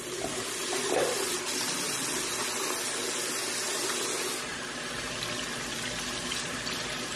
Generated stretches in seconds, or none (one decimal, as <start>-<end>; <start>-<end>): 4.5-5.2